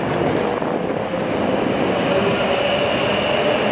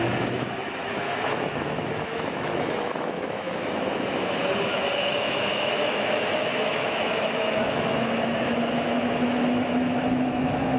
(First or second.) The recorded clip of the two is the first